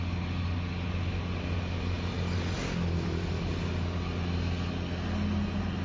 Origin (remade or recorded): recorded